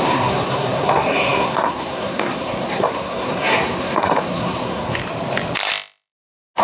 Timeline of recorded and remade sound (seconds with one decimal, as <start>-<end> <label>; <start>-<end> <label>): 0.0-5.0 remade; 5.0-6.6 recorded